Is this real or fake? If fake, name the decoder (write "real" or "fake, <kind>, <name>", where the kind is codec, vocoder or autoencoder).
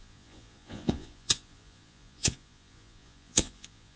fake, vocoder, Vocos